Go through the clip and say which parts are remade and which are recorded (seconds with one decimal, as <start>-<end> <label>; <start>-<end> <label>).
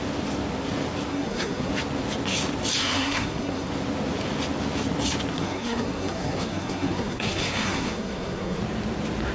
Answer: 0.0-1.1 recorded; 1.1-1.7 remade; 1.7-2.8 recorded; 2.8-3.7 remade; 3.7-5.3 recorded; 5.3-8.6 remade; 8.6-9.3 recorded